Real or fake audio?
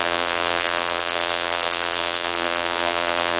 fake